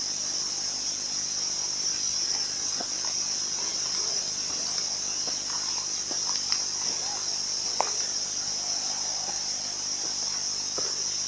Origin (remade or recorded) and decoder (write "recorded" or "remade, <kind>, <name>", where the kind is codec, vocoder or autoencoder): recorded